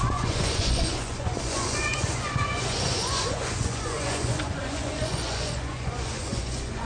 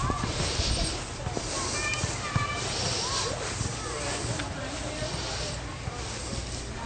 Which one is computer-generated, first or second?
first